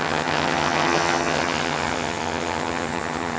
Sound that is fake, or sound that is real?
fake